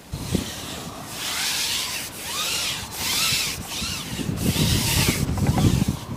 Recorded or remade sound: remade